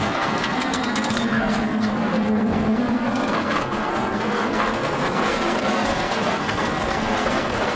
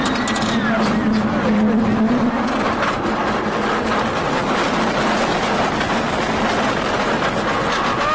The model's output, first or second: first